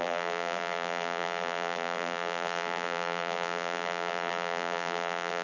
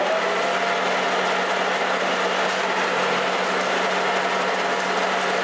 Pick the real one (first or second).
second